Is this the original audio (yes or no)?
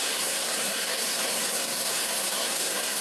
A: no